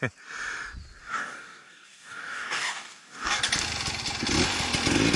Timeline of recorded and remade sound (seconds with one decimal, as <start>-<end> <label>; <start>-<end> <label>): 0.0-1.0 recorded; 1.0-3.4 remade; 3.4-5.2 recorded